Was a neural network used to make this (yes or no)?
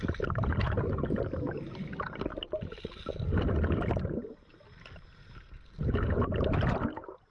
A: no